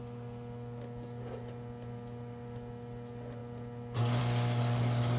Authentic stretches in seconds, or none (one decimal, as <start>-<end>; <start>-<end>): 0.0-5.2

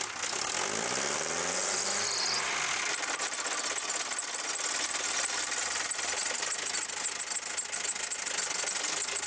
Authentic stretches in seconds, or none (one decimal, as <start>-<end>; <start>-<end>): 0.0-9.3

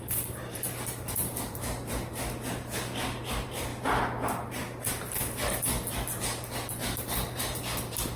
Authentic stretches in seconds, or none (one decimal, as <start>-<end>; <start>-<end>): 2.2-3.3; 3.7-5.9

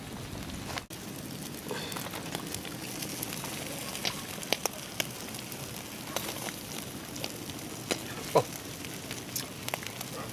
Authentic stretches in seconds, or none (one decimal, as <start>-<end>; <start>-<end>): 0.0-10.3

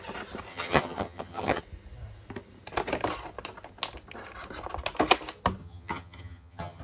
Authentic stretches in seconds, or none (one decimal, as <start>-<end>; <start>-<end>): 0.0-0.5; 1.6-5.6